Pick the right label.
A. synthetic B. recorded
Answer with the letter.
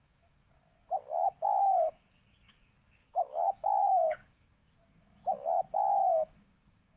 A